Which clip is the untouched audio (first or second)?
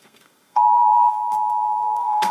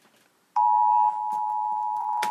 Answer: second